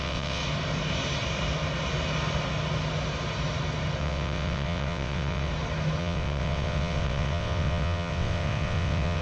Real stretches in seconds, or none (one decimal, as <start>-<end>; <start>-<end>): 0.4-4.0; 5.5-6.0